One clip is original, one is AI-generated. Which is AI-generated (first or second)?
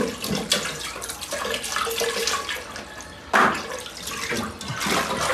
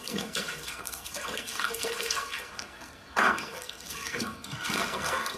second